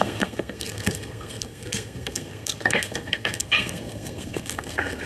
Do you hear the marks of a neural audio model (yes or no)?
yes